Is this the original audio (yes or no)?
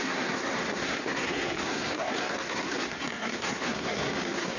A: no